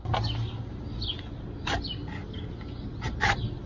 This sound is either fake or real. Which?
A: real